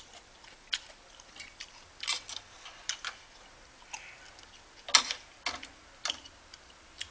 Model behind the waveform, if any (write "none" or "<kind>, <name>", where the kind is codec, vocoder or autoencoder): none